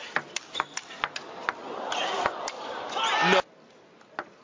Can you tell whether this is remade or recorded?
recorded